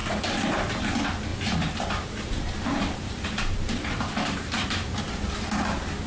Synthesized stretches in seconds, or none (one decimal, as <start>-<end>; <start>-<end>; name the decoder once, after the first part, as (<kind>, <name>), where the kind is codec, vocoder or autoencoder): 0.0-0.8 (vocoder, BigVGAN v2); 1.3-5.0